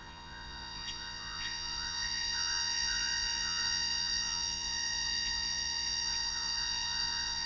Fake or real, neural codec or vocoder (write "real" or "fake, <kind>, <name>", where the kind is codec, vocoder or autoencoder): fake, vocoder, Vocos